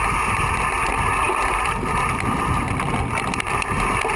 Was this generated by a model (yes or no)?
no